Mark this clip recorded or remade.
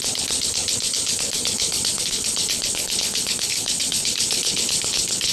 remade